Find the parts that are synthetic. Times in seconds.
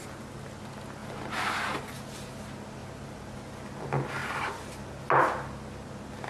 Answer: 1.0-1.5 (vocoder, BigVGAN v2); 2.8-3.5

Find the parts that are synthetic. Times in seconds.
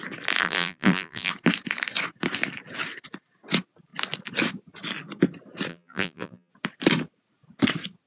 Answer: 0.4-1.3 (vocoder, BigVGAN v2); 5.7-6.5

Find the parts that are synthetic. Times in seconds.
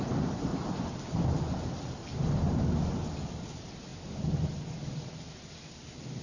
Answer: 0.5-1.4 (vocoder, BigVGAN v2); 2.1-2.7; 3.9-5.2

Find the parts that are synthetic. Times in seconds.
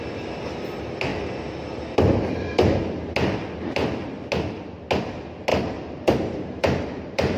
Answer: 5.5-7.4 (vocoder, BigVGAN v2)